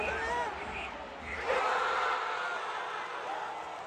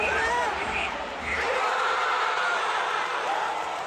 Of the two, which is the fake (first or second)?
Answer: second